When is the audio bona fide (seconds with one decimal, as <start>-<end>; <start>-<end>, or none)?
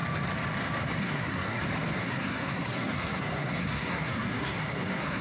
0.0-1.0; 1.6-2.0